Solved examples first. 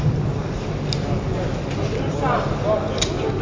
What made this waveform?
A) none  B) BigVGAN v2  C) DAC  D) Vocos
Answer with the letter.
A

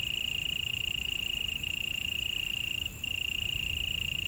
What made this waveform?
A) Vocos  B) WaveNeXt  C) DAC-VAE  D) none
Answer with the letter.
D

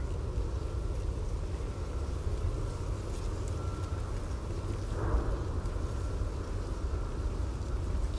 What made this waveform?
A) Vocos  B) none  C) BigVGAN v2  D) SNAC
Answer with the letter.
B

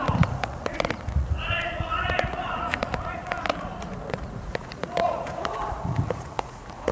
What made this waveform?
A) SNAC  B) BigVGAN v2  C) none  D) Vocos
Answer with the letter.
D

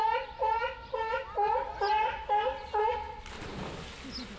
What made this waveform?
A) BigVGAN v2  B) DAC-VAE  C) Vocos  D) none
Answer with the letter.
D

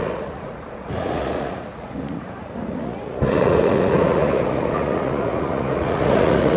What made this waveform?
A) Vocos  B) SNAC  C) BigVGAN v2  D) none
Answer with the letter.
A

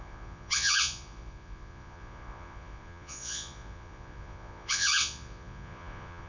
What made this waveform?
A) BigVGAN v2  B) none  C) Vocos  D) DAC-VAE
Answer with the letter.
C